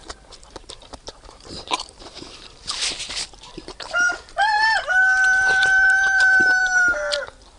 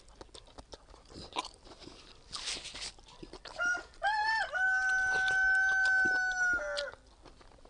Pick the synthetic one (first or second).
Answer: first